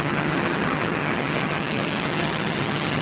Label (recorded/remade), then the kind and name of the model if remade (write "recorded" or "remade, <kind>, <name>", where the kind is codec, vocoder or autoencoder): remade, vocoder, HiFi-GAN